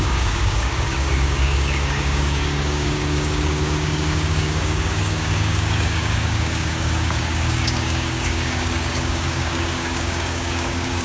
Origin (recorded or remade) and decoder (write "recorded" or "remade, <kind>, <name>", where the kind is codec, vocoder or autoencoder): remade, codec, DAC